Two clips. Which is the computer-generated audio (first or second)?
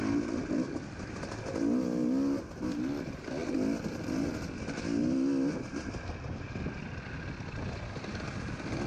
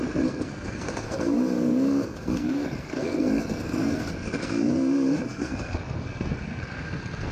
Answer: second